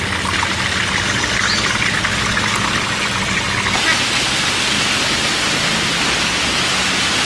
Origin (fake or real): real